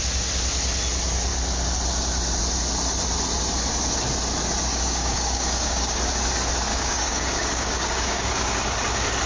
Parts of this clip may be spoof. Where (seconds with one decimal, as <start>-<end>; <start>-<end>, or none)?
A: 4.7-6.0; 6.7-8.3